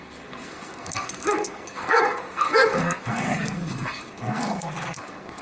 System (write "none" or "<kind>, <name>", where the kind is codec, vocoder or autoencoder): codec, SNAC